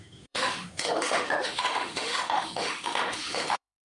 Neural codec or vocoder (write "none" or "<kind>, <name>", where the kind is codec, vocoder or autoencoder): autoencoder, DAC-VAE